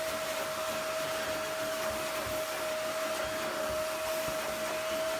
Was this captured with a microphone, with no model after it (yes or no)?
yes